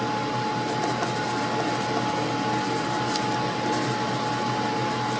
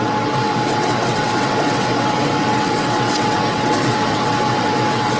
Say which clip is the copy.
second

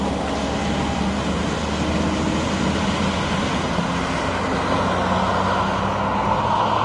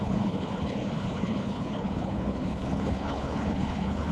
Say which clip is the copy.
second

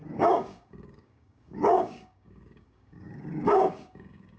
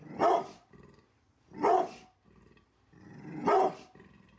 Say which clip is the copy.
first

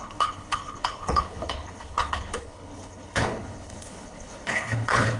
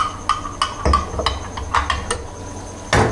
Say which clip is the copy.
first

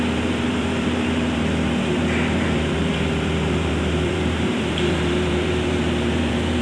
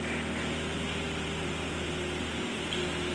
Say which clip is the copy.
first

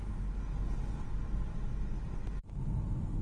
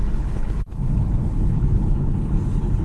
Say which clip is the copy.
second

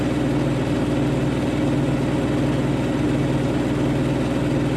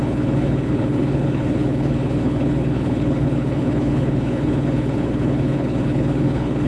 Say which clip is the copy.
second